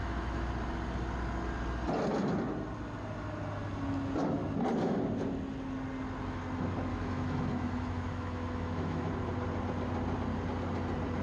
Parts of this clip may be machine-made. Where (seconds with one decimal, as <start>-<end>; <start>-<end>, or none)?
0.0-0.5; 6.9-9.1